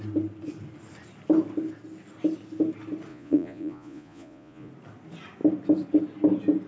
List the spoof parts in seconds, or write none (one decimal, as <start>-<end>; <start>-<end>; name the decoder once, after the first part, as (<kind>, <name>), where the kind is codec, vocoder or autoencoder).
3.1-4.7 (vocoder, Vocos)